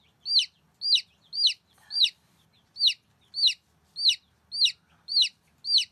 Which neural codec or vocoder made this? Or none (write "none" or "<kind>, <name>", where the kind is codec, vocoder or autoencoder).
none